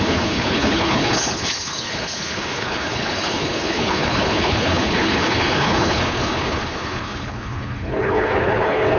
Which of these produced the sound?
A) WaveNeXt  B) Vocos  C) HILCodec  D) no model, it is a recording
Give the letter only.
C